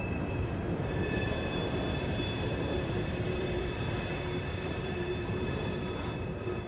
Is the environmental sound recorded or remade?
remade